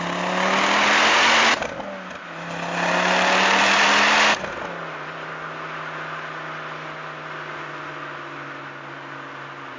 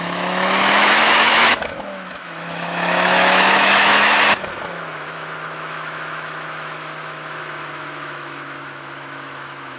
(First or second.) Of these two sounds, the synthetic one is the second